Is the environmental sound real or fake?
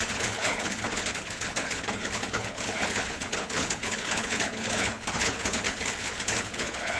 fake